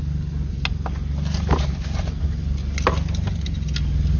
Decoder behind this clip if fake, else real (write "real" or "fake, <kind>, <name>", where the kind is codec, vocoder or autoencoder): real